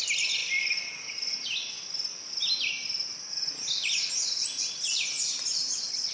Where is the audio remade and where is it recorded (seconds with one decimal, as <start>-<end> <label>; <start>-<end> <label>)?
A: 0.0-6.1 recorded